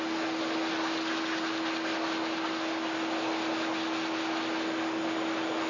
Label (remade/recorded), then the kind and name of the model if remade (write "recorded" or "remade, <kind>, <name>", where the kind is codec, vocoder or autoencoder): recorded